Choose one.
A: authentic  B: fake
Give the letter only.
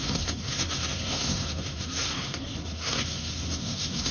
B